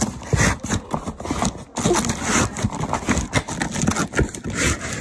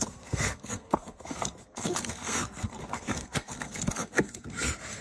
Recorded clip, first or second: first